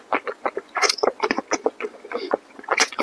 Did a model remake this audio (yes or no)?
yes